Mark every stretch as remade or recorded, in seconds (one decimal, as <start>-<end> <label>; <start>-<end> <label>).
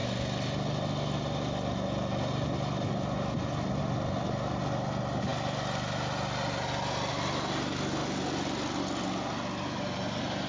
0.0-10.5 recorded